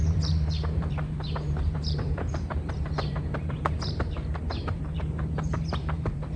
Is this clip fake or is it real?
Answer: fake